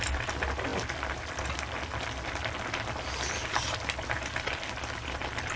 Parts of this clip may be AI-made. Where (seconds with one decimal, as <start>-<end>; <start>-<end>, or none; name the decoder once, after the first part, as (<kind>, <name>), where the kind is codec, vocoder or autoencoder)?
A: none